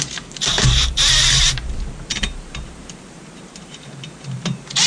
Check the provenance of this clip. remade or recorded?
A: remade